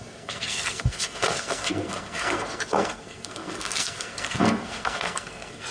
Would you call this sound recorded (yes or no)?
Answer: no